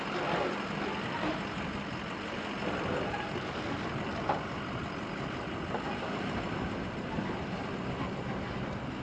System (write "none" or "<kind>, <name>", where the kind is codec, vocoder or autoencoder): none